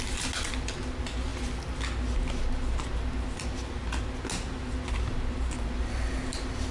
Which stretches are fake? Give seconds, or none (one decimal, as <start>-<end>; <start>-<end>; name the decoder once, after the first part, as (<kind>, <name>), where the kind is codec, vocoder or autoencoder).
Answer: none